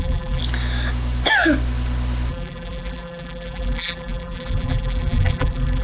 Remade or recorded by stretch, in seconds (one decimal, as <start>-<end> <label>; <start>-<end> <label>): 0.0-0.4 remade; 0.4-2.3 recorded; 2.3-5.8 remade

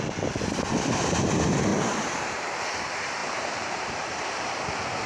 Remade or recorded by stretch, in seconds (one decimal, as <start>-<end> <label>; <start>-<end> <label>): 0.0-1.7 recorded; 1.7-2.6 remade; 2.6-3.2 recorded; 3.2-4.3 remade; 4.3-5.1 recorded

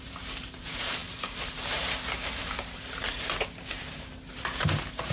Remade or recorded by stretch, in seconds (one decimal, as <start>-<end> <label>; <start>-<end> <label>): 0.0-5.1 remade

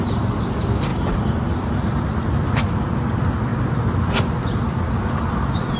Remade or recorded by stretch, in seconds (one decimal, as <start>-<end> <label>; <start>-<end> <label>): 0.0-0.9 recorded; 0.9-1.8 remade; 1.8-5.8 recorded

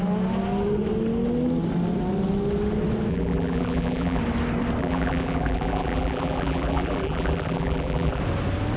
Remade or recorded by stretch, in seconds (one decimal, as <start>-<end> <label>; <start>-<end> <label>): 0.0-3.1 recorded; 3.1-4.2 remade; 4.2-4.8 recorded; 4.8-8.2 remade; 8.2-8.8 recorded

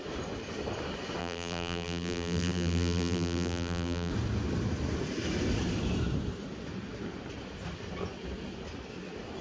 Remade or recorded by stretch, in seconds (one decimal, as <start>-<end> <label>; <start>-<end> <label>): 0.0-1.2 recorded; 1.2-4.1 remade; 4.1-9.4 recorded

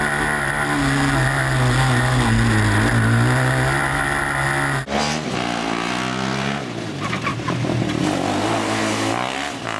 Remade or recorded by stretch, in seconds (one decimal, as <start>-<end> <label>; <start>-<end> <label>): 0.0-7.3 recorded; 7.3-8.0 remade; 8.0-8.8 recorded; 8.8-9.8 remade

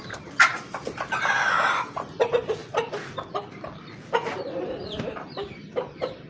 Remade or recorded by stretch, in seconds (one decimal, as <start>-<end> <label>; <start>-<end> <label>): 0.0-2.6 remade; 2.6-5.0 recorded; 5.0-6.3 remade